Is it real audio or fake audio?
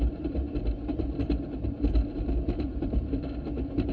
fake